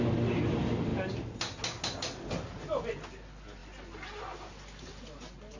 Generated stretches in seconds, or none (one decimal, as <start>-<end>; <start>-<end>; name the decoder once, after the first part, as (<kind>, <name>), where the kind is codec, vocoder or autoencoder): none